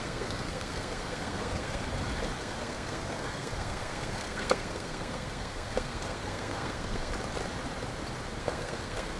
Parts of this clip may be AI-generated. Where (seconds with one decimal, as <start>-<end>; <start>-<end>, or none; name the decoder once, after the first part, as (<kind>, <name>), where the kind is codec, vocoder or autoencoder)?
0.0-1.8 (codec, SNAC); 2.4-7.1; 8.4-9.2